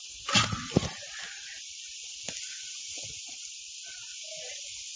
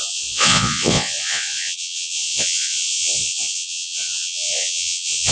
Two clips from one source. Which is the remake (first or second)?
second